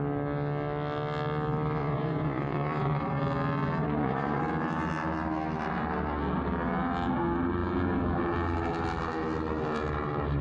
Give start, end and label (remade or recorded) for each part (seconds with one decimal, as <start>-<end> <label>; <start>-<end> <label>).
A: 0.0-1.8 recorded; 1.8-3.2 remade; 3.2-3.8 recorded; 3.8-4.4 remade; 4.4-10.4 recorded